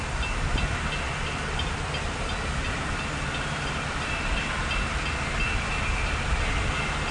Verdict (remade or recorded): recorded